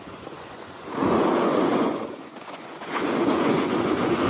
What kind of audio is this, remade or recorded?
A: remade